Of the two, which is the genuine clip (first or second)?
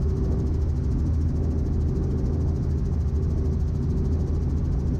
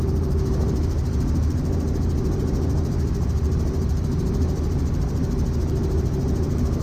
first